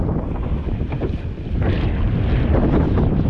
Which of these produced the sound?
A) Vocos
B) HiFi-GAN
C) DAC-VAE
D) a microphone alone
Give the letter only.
D